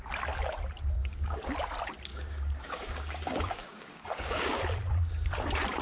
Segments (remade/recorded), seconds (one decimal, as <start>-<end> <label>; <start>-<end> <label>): 0.0-1.0 recorded; 1.0-1.5 remade; 1.5-2.1 recorded; 2.1-4.6 remade; 4.6-5.8 recorded